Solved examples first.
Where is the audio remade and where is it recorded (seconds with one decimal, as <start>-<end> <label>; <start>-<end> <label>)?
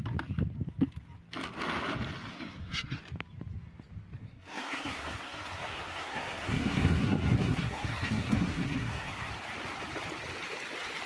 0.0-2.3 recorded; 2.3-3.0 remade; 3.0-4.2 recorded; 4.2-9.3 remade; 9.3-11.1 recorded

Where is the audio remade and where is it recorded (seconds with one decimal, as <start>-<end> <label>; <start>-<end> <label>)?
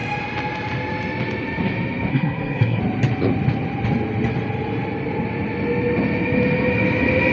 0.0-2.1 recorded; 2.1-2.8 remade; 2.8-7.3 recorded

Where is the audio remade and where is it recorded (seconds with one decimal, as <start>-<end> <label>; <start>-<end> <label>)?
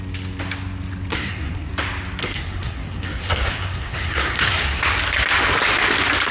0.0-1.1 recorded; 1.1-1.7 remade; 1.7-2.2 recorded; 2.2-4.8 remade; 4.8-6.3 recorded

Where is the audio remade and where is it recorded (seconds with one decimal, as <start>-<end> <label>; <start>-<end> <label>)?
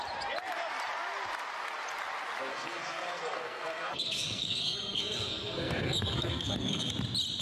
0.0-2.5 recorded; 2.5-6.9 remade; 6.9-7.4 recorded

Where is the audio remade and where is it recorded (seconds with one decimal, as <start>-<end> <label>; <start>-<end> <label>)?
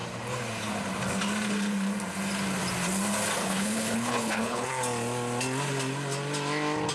0.0-3.4 recorded; 3.4-4.7 remade; 4.7-6.9 recorded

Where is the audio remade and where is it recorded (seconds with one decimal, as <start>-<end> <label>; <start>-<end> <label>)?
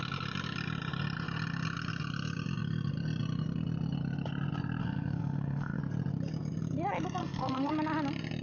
0.0-4.8 recorded; 4.8-5.8 remade; 5.8-7.2 recorded; 7.2-7.7 remade; 7.7-8.4 recorded